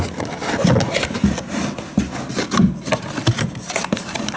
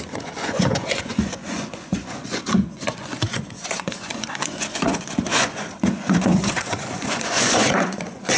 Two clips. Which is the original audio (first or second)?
first